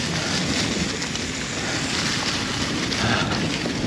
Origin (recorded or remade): recorded